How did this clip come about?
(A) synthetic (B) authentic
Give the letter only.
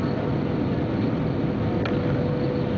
B